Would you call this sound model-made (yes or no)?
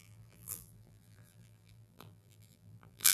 yes